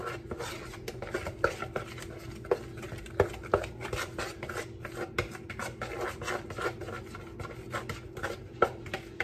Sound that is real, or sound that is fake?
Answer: real